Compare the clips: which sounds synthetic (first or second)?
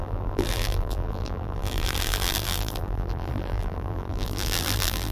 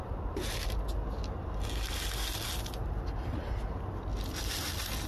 first